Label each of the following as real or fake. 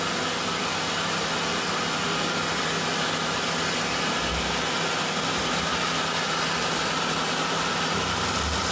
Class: real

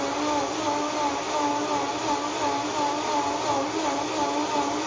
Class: real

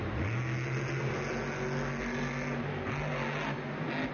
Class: real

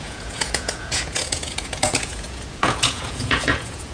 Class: fake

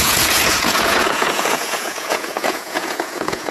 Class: fake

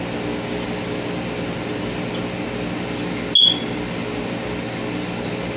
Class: real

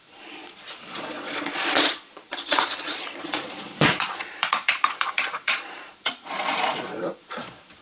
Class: fake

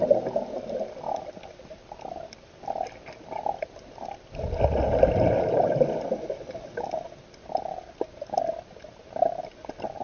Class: real